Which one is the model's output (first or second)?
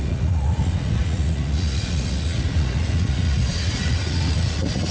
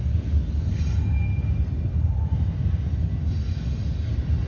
first